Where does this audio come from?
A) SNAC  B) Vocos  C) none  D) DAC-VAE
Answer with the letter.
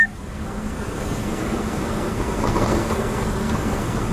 A